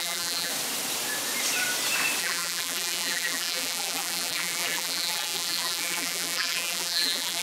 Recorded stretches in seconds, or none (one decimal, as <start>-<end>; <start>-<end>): 0.5-2.2